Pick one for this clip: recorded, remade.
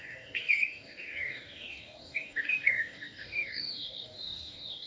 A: remade